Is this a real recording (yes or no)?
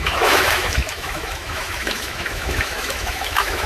no